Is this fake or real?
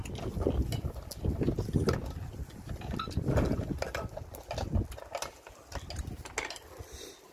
real